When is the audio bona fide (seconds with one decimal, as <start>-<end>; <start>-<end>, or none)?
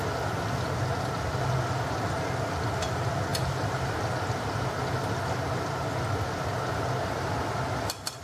0.0-3.3; 4.0-8.2